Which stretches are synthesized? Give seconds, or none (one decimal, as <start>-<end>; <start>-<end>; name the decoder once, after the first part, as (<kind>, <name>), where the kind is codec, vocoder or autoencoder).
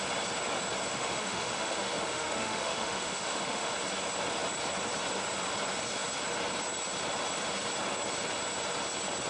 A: 0.9-3.7 (autoencoder, DAC-VAE)